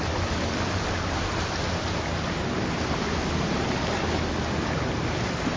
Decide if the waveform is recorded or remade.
recorded